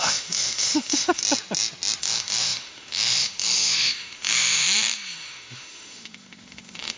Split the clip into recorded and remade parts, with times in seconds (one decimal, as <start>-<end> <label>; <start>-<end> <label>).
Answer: 0.0-1.2 remade; 1.2-2.0 recorded; 2.0-7.0 remade